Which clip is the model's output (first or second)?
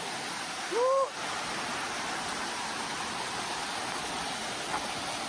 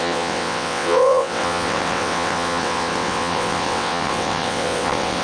second